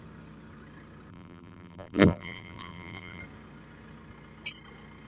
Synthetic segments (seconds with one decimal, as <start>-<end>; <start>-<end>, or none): 1.1-3.2